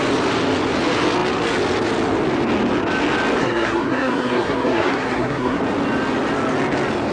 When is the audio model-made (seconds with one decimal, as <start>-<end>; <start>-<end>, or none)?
3.4-5.6